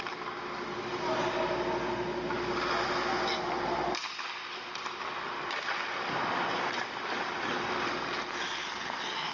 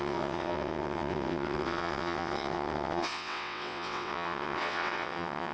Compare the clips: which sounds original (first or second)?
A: first